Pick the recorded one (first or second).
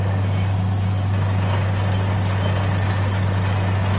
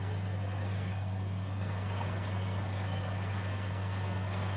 first